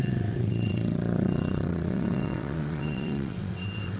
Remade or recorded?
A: remade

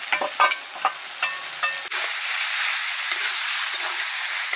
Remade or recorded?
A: recorded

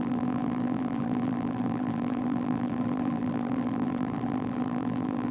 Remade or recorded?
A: remade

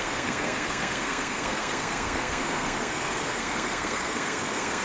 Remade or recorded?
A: remade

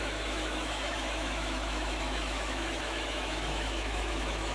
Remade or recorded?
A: remade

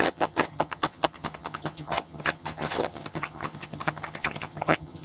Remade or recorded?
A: remade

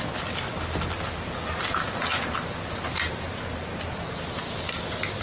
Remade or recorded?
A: recorded